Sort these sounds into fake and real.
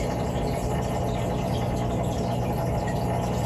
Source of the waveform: real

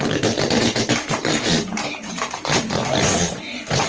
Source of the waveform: fake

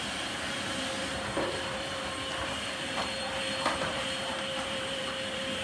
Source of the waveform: fake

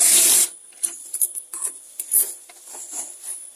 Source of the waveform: real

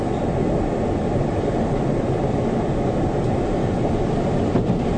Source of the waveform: fake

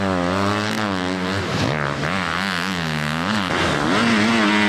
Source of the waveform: real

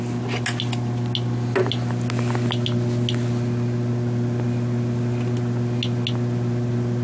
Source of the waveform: real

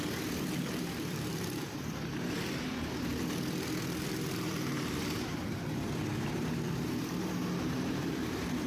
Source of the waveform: fake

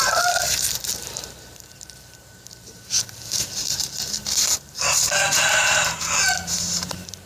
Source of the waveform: fake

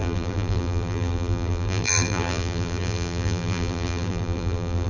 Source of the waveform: fake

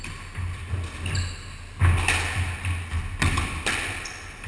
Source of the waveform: real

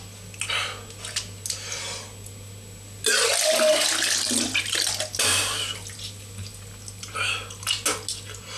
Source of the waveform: real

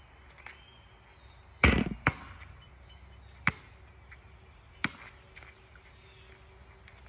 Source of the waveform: real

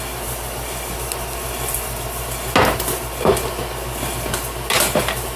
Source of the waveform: real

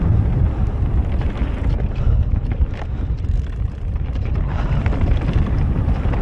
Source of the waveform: fake